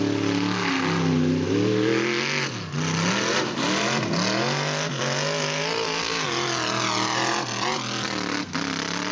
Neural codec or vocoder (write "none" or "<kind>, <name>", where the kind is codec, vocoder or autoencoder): none